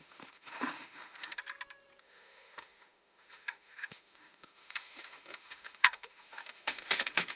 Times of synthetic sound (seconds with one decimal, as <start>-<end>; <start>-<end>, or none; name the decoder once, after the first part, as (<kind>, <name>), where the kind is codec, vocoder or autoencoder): 0.0-1.4 (autoencoder, DAC-VAE); 2.0-7.4